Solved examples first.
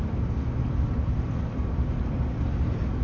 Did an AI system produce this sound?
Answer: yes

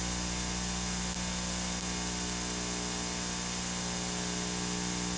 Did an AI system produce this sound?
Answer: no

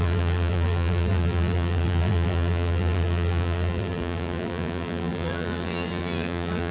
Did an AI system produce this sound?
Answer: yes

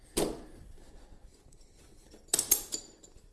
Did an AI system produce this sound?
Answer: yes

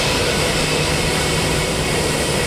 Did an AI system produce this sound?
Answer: yes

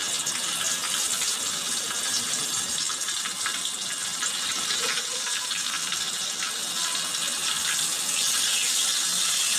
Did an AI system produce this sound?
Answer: no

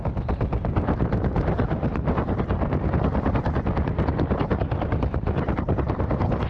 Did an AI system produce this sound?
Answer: no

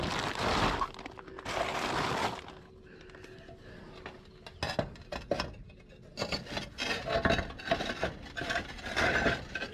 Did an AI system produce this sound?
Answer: no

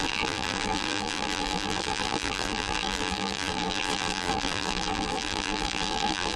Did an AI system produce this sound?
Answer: yes